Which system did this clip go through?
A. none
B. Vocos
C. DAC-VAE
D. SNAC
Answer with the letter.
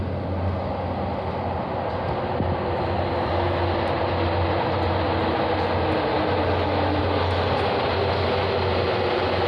A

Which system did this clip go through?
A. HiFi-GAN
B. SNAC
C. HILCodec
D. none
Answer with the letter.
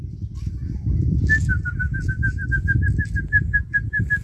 D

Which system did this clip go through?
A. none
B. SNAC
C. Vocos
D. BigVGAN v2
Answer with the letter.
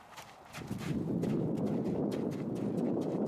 A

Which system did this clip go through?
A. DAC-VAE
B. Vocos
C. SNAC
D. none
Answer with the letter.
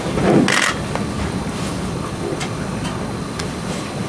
D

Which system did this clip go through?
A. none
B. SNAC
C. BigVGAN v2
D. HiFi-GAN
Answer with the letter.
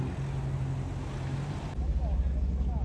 A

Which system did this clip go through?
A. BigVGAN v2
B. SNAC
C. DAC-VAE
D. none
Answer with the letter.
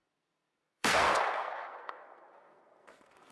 B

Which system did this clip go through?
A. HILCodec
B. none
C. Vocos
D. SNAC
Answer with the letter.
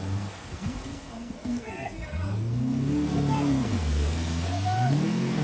D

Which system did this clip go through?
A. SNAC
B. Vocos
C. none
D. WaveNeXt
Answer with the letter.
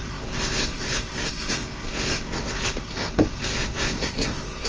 A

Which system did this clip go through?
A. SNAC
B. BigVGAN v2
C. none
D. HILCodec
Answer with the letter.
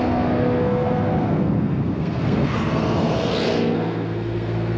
A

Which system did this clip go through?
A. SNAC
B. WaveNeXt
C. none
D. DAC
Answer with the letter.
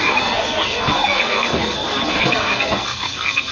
A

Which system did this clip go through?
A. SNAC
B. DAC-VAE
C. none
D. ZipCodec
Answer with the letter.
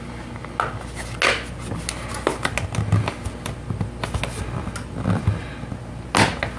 C